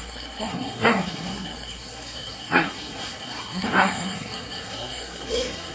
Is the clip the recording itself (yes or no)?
no